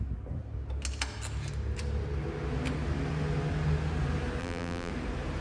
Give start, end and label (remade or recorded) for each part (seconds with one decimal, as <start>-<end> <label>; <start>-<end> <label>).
0.0-4.4 recorded; 4.4-4.9 remade; 4.9-5.4 recorded